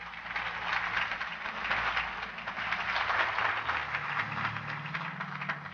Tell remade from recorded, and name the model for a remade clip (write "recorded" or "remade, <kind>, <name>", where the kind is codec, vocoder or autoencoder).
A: recorded